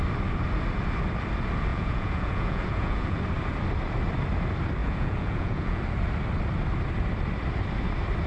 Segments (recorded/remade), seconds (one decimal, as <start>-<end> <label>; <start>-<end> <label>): 0.0-1.7 recorded; 1.7-3.2 remade; 3.2-4.8 recorded; 4.8-5.8 remade; 5.8-8.3 recorded